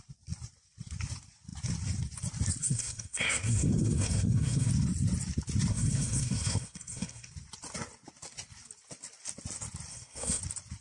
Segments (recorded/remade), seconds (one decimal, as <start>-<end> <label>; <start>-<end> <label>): 0.0-2.6 recorded; 2.6-4.7 remade; 4.7-5.7 recorded; 5.7-7.3 remade; 7.3-9.9 recorded; 9.9-10.4 remade; 10.4-10.8 recorded